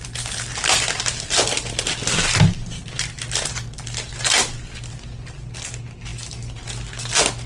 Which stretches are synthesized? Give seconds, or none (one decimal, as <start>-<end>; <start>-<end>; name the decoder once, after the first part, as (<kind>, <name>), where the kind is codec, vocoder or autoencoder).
none